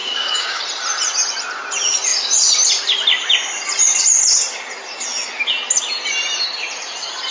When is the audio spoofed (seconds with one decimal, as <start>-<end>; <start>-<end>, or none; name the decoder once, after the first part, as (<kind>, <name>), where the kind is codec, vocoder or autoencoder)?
0.0-0.6 (codec, DAC)